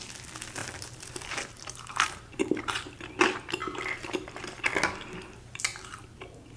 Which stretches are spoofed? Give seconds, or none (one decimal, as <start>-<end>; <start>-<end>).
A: 0.6-3.0